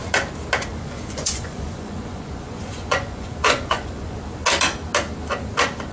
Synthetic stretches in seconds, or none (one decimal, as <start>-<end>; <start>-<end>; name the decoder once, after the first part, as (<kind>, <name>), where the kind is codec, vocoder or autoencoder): 0.7-4.2 (vocoder, Vocos)